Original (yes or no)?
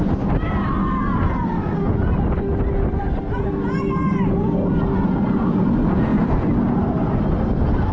yes